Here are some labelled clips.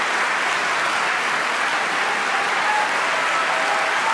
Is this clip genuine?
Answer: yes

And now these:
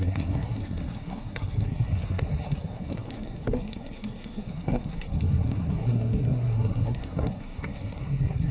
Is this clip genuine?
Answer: no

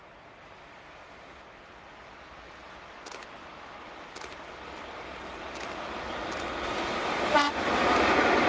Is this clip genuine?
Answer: yes